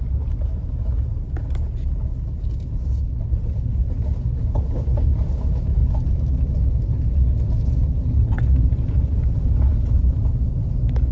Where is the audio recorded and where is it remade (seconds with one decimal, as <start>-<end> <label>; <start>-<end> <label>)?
0.0-11.1 recorded